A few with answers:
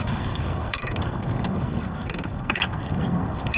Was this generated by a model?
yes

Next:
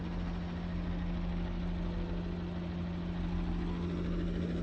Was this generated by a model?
no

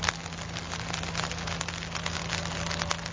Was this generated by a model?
no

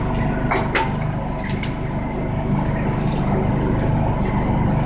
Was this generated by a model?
no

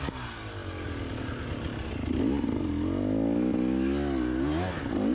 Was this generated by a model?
no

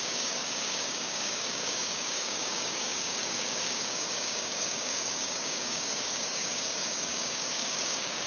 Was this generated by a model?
yes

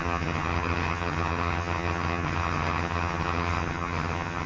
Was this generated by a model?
yes